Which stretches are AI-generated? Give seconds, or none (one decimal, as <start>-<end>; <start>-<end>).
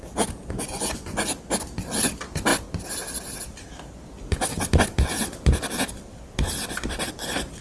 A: 0.4-1.2